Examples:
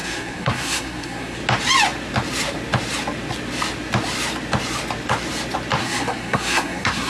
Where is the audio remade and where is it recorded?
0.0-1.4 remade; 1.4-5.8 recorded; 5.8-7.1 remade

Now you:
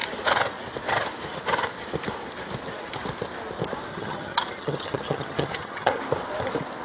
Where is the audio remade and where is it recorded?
0.0-3.9 recorded; 3.9-6.0 remade; 6.0-6.8 recorded

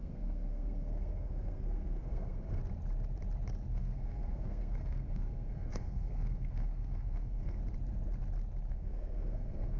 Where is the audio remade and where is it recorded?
0.0-2.6 remade; 2.6-3.7 recorded; 3.7-7.6 remade; 7.6-8.7 recorded; 8.7-9.8 remade

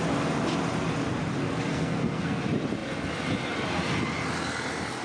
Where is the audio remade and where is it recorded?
0.0-1.7 recorded; 1.7-2.4 remade; 2.4-5.0 recorded

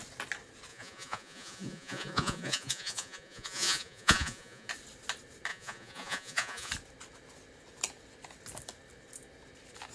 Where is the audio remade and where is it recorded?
0.0-0.7 recorded; 0.7-4.7 remade; 4.7-5.5 recorded; 5.5-6.7 remade; 6.7-9.9 recorded

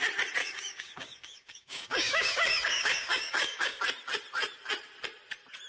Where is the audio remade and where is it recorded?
0.0-0.4 recorded; 0.4-3.8 remade; 3.8-5.7 recorded

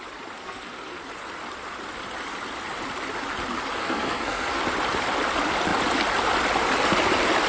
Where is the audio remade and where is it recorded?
0.0-0.4 recorded; 0.4-1.0 remade; 1.0-3.8 recorded; 3.8-4.6 remade; 4.6-7.5 recorded